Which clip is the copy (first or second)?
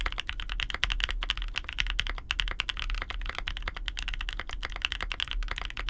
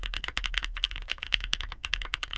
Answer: second